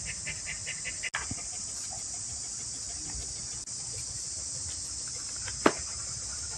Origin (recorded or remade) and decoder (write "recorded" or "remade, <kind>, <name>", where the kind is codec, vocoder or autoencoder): recorded